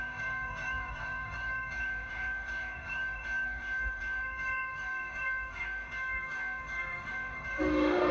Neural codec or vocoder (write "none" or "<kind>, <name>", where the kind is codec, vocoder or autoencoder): autoencoder, DAC-VAE